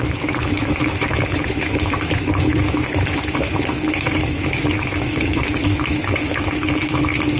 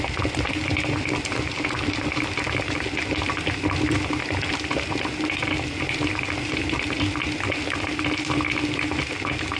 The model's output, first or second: first